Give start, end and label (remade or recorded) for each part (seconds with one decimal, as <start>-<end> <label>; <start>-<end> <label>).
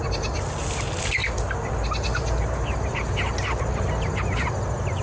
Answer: 0.0-5.0 recorded